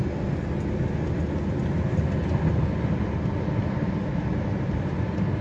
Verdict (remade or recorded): recorded